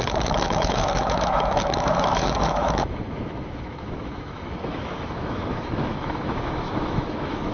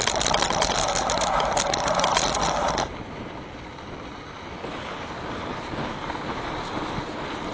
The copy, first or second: first